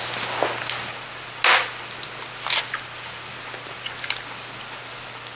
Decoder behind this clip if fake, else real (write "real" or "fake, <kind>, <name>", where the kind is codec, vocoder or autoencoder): real